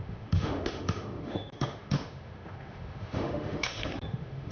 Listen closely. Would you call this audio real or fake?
fake